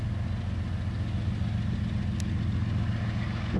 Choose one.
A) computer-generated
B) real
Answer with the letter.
B